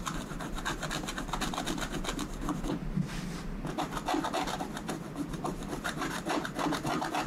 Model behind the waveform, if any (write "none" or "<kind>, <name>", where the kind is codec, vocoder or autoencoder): none